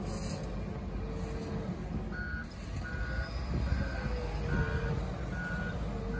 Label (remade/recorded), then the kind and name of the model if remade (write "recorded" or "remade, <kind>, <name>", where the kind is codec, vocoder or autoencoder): recorded